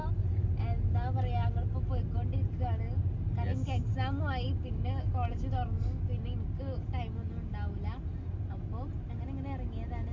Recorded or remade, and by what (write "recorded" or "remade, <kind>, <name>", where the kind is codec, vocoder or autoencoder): recorded